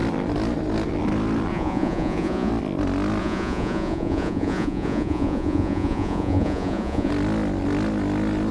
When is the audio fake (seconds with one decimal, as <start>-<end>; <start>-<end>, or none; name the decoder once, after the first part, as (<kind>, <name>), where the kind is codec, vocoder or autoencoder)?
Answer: 1.5-2.5 (vocoder, Vocos); 3.2-7.1